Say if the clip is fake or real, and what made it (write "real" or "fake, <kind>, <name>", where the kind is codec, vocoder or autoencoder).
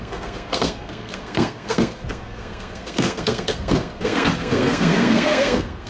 fake, codec, SNAC